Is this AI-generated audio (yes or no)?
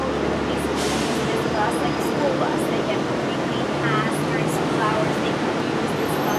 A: no